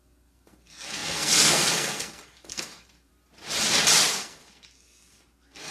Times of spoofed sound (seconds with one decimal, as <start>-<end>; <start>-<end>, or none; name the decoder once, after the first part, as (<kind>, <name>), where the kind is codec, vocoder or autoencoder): 0.0-3.1 (codec, SNAC); 4.1-5.7